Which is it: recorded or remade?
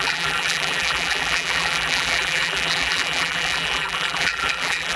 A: remade